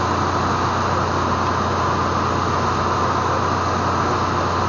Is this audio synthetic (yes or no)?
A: no